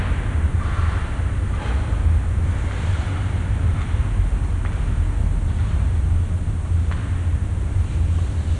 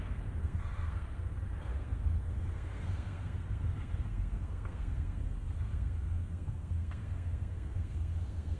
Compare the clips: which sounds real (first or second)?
first